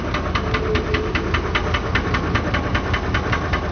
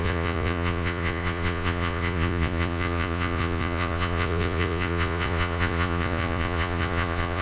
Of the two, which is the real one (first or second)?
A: first